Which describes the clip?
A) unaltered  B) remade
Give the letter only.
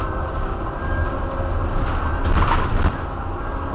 A